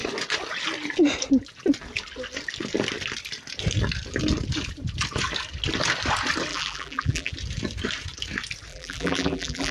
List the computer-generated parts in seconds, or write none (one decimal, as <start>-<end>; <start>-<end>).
6.5-7.3; 8.7-9.7